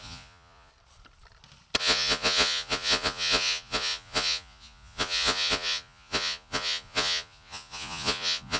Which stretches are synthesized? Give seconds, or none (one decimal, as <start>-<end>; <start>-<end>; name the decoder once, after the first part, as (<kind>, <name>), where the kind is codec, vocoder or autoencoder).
0.0-0.7 (vocoder, Vocos); 1.8-8.6